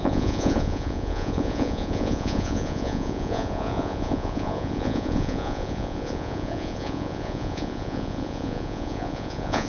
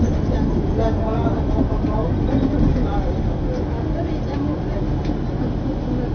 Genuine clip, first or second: second